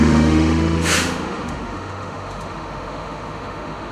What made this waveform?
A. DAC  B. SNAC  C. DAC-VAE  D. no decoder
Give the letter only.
C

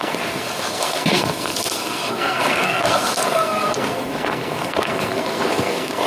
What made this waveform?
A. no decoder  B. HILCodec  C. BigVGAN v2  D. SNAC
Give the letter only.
D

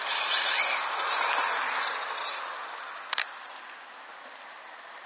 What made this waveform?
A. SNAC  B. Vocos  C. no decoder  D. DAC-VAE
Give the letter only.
C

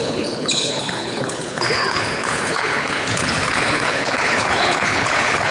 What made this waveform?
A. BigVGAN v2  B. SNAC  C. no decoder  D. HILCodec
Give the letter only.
D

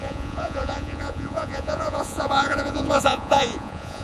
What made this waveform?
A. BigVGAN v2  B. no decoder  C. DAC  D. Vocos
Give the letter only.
D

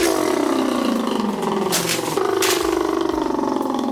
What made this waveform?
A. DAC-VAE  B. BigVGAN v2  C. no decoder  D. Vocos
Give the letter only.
C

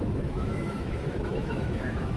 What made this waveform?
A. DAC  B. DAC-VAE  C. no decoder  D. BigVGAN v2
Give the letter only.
B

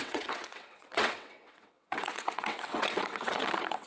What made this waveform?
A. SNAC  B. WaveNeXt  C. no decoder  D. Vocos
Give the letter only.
B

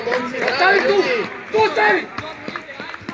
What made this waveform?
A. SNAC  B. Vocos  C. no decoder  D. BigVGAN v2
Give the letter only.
C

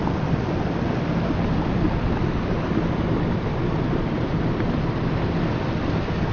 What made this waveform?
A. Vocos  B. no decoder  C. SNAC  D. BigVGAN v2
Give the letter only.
B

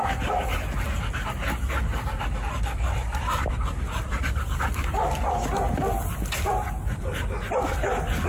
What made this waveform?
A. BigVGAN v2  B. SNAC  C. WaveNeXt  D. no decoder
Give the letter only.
D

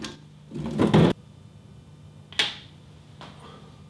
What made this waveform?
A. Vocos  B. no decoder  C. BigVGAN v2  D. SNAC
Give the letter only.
B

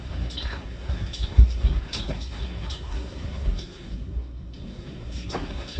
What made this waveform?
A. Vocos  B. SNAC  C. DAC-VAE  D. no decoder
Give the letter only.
B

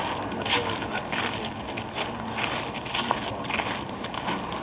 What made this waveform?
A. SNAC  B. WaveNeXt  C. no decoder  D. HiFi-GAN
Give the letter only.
C